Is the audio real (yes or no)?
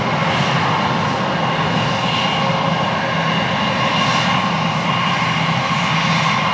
yes